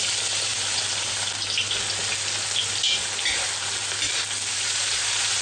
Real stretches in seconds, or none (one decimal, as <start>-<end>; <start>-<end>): 0.0-5.4